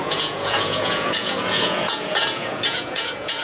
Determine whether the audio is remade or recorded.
remade